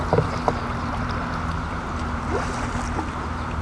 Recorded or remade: recorded